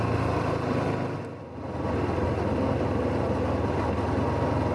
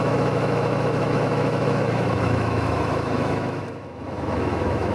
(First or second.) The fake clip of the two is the second